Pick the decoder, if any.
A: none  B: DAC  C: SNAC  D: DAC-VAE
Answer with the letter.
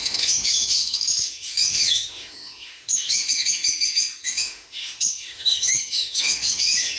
D